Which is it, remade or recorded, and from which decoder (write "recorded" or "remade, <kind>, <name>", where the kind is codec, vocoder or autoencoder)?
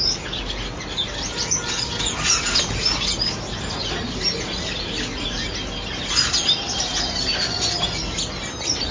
recorded